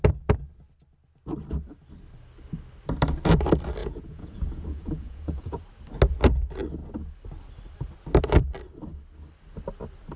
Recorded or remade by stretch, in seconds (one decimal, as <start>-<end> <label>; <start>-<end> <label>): 0.0-3.8 recorded; 3.8-5.6 remade; 5.6-10.2 recorded

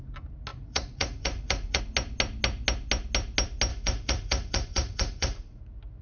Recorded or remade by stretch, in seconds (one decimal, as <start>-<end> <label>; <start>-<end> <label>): 0.0-0.5 recorded; 0.5-1.8 remade; 1.8-3.7 recorded; 3.7-5.6 remade; 5.6-6.0 recorded

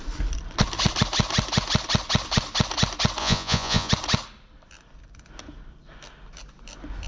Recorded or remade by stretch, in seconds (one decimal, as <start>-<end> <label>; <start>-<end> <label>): 0.0-3.2 recorded; 3.2-3.9 remade; 3.9-7.1 recorded

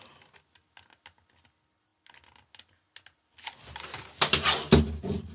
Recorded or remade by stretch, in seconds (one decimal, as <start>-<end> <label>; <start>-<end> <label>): 0.0-5.3 recorded

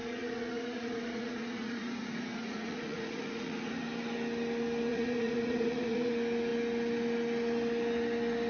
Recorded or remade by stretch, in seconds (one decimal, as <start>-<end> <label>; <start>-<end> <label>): 0.0-3.7 remade; 3.7-4.9 recorded; 4.9-6.1 remade; 6.1-8.5 recorded

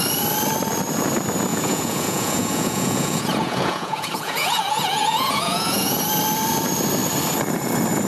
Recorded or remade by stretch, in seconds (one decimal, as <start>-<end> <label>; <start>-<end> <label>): 0.0-1.5 recorded; 1.5-6.0 remade; 6.0-8.1 recorded

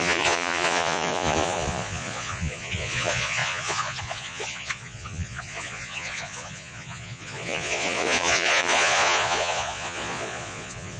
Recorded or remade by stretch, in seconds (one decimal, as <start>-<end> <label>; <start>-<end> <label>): 0.0-11.0 remade

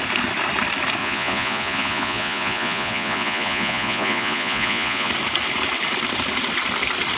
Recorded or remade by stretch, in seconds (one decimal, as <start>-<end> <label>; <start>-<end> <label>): 0.0-1.0 recorded; 1.0-5.1 remade; 5.1-7.2 recorded